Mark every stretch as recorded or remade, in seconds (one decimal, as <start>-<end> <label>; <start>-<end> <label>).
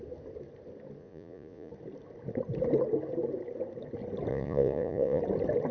0.0-1.0 recorded; 1.0-1.7 remade; 1.7-4.3 recorded; 4.3-5.2 remade; 5.2-5.7 recorded